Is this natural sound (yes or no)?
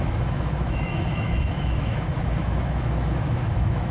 no